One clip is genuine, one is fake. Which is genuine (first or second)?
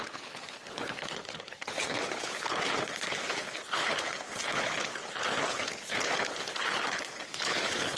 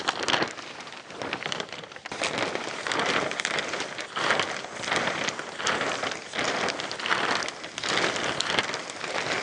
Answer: second